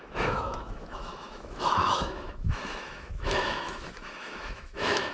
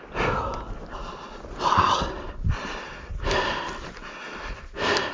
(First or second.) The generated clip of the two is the first